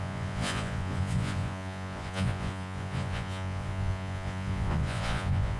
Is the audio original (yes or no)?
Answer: no